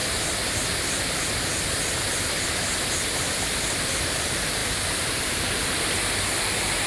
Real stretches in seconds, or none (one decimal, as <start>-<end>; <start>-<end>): 0.0-6.9